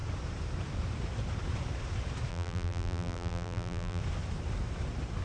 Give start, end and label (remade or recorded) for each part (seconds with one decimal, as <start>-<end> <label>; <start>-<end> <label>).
0.0-2.3 recorded; 2.3-4.0 remade; 4.0-5.2 recorded